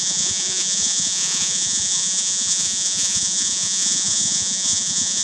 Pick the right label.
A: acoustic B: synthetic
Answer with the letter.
B